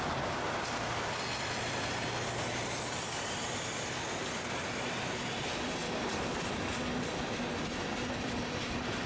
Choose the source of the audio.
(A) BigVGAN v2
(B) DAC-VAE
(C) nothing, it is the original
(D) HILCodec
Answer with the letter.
A